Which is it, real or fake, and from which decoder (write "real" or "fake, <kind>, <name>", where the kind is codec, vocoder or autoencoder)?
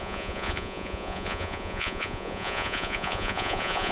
fake, vocoder, Vocos